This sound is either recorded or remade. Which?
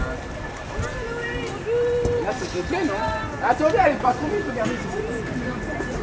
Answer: recorded